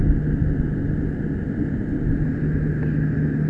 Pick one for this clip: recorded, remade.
recorded